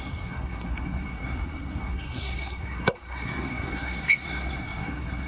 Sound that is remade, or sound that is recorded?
remade